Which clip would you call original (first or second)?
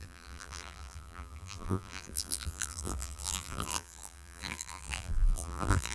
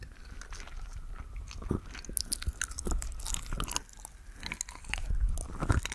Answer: second